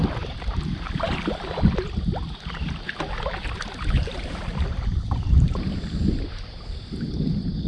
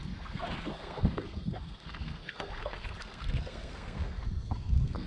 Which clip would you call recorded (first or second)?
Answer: first